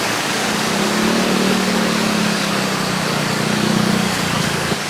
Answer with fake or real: fake